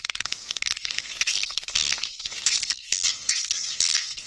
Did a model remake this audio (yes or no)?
yes